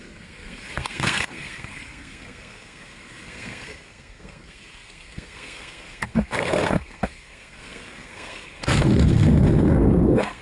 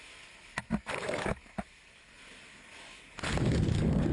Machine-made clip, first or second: first